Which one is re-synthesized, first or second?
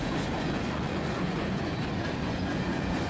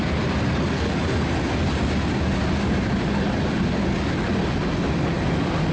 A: first